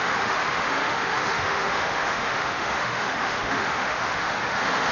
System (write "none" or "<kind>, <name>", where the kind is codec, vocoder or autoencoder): autoencoder, DAC-VAE